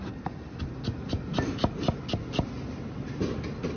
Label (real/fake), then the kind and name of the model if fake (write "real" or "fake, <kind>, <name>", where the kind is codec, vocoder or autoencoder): real